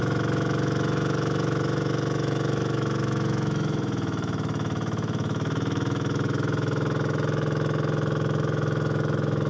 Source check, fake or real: fake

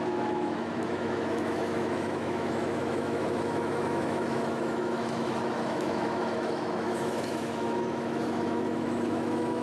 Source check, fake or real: fake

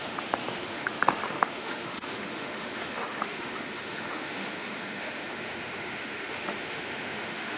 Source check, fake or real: fake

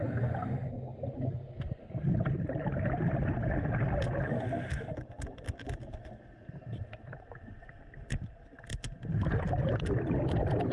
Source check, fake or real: real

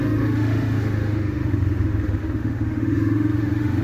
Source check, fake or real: fake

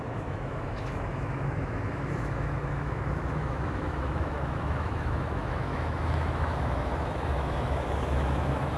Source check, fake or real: fake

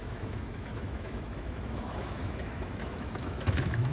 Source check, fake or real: fake